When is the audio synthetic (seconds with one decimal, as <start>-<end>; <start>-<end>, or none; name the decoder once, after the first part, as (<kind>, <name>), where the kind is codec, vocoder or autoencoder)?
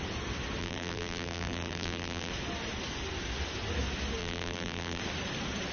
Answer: 0.6-2.3 (vocoder, BigVGAN v2); 4.2-5.0